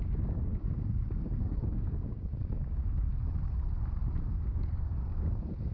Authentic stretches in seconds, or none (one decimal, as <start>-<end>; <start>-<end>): 3.1-4.3

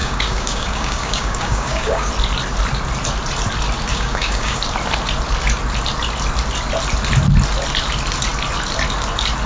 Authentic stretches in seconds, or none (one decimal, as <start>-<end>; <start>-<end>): 2.1-3.9; 4.6-9.5

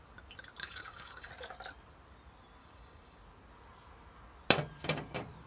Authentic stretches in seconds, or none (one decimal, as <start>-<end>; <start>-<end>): 0.0-0.6; 1.3-2.6; 3.2-5.5

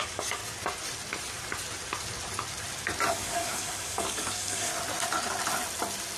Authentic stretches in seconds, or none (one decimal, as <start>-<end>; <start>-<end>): 0.4-3.1; 4.7-6.2

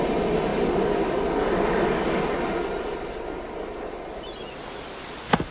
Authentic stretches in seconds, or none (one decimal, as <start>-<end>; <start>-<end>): 0.0-0.5; 2.2-5.5

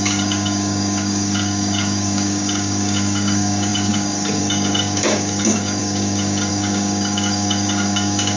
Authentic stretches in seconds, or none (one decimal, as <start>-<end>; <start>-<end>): none